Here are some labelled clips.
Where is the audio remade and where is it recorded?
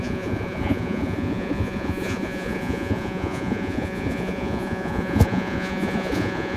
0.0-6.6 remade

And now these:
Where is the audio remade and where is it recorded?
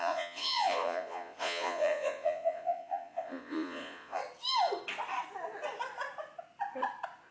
0.0-4.2 remade; 4.2-7.3 recorded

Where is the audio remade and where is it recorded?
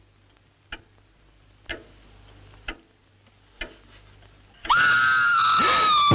0.0-4.6 recorded; 4.6-5.4 remade; 5.4-6.1 recorded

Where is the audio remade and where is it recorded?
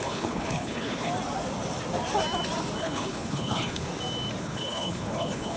0.0-1.1 remade; 1.1-2.8 recorded; 2.8-3.9 remade; 3.9-4.4 recorded; 4.4-5.6 remade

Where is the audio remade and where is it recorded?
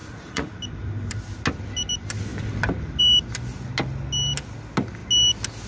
0.0-0.6 remade; 0.6-5.7 recorded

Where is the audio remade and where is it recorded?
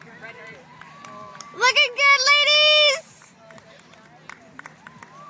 0.0-5.3 recorded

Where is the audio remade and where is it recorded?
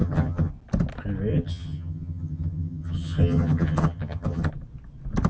0.0-0.5 remade; 0.5-1.3 recorded; 1.3-4.5 remade; 4.5-5.3 recorded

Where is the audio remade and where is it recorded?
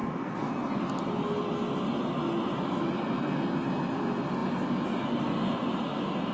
0.0-0.5 remade; 0.5-6.3 recorded